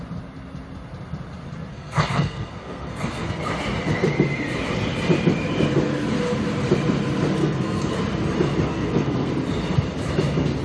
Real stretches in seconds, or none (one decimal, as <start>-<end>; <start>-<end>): 0.0-1.7; 3.4-7.4; 8.0-8.7; 9.3-10.6